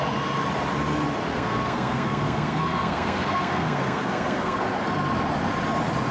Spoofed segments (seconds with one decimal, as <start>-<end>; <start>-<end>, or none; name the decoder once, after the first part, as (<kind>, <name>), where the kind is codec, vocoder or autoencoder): 1.3-4.6 (codec, SNAC)